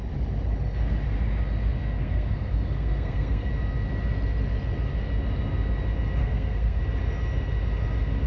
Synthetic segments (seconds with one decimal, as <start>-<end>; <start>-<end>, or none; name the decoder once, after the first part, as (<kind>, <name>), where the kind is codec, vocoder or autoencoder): 2.0-3.5 (codec, SNAC); 6.2-6.8